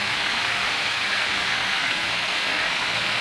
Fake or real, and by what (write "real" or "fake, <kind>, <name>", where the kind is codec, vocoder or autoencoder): fake, codec, SNAC